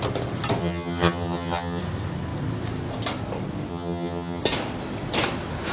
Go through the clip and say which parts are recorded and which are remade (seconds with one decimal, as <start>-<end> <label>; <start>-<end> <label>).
0.0-0.6 recorded; 0.6-1.8 remade; 1.8-3.7 recorded; 3.7-4.4 remade; 4.4-5.7 recorded